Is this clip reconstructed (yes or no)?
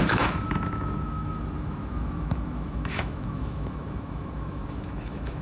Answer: yes